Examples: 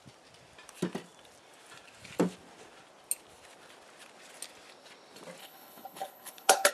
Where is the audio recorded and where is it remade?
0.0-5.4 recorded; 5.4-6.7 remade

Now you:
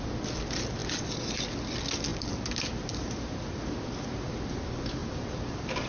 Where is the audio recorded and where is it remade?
0.0-2.1 recorded; 2.1-4.3 remade; 4.3-5.0 recorded; 5.0-5.9 remade